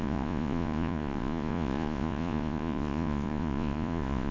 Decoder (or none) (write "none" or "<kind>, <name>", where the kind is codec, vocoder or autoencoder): vocoder, Vocos